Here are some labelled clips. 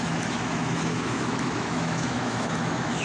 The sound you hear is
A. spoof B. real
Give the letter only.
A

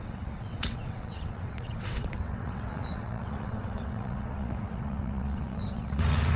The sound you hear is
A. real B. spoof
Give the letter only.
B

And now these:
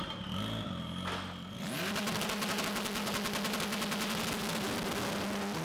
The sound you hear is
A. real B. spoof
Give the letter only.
A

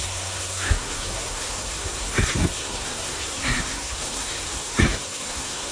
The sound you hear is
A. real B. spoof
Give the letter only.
B